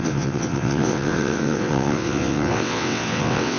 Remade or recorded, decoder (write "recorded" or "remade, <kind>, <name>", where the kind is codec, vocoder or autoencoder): remade, vocoder, WaveNeXt